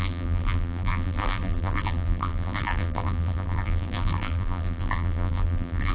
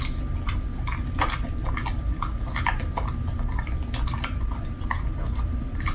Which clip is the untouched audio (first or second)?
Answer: second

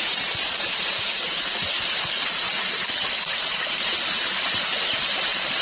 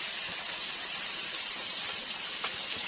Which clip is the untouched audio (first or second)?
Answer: second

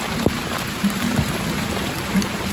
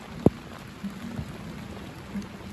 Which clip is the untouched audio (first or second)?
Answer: second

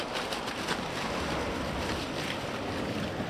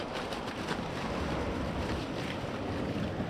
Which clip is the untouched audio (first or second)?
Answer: first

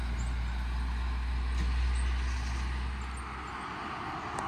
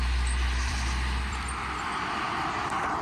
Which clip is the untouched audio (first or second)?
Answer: first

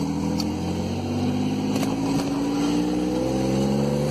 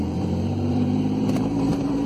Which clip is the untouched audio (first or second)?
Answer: first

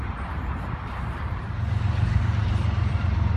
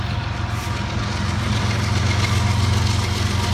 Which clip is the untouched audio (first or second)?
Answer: second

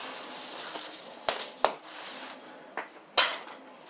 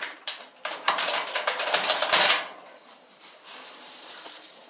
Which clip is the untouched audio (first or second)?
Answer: first